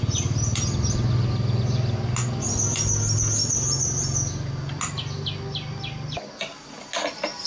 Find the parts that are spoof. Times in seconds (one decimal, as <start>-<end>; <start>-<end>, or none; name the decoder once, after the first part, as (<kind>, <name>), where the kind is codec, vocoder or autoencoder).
none